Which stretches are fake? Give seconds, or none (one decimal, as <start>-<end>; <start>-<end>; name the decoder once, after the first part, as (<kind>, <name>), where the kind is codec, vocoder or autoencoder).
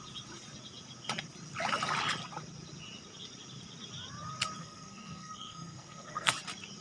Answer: 4.6-6.3 (codec, SNAC)